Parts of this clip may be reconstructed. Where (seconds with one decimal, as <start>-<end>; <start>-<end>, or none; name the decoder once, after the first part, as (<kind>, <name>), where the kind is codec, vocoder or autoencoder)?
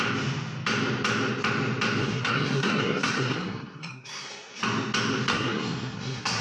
2.0-4.6 (codec, SNAC); 5.3-6.4